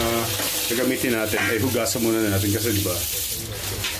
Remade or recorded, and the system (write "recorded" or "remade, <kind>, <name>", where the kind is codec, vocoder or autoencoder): recorded